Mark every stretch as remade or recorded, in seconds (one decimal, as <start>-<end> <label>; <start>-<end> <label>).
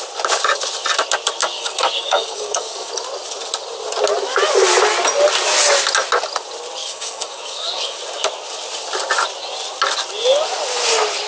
0.0-1.4 recorded; 1.4-2.9 remade; 2.9-6.8 recorded; 6.8-8.0 remade; 8.0-11.3 recorded